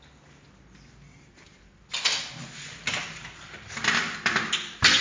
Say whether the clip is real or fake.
real